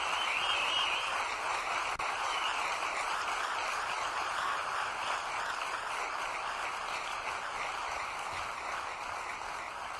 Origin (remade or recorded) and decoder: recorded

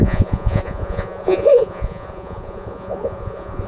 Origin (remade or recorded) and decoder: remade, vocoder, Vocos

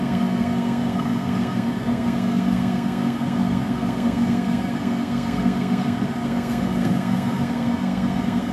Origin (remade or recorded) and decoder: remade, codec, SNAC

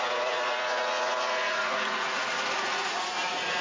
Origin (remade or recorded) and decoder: remade, vocoder, Vocos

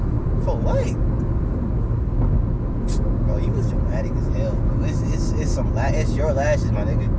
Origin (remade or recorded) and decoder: recorded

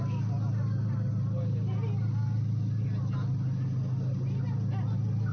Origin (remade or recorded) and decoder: recorded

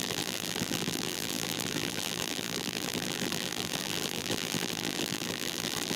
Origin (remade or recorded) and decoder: remade, vocoder, BigVGAN v2